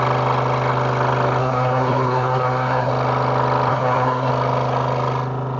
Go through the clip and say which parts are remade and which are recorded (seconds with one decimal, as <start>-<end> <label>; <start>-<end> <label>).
0.0-1.4 recorded; 1.4-2.9 remade; 2.9-3.7 recorded; 3.7-4.3 remade; 4.3-5.6 recorded